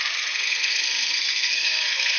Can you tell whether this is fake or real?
fake